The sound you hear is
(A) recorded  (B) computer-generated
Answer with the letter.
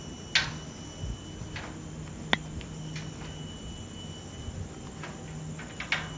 A